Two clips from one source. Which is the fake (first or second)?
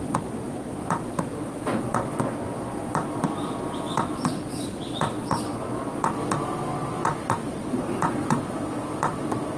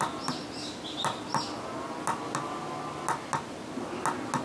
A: first